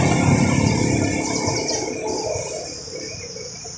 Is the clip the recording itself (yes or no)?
yes